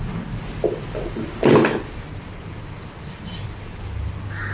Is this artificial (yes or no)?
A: no